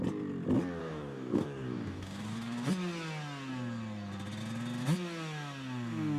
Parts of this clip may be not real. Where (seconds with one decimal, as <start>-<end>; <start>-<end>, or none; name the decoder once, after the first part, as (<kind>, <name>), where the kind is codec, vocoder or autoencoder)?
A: 0.8-2.7 (codec, DAC)